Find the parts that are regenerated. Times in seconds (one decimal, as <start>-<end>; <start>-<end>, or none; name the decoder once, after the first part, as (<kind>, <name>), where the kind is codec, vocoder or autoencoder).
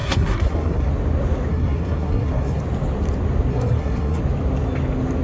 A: 0.0-0.9 (codec, SNAC); 1.5-2.6; 3.5-4.2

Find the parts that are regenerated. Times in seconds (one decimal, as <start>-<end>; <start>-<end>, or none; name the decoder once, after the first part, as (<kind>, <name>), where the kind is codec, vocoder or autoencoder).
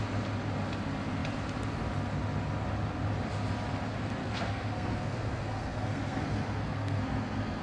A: 4.2-7.6 (codec, SNAC)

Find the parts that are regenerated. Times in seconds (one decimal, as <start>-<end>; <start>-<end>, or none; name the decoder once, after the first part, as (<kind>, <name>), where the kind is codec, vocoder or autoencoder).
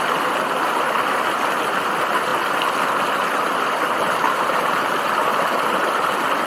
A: none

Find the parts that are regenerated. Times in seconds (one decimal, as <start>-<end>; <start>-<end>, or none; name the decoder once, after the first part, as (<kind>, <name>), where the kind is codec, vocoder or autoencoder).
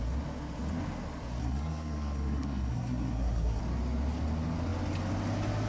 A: 1.4-3.6 (codec, SNAC)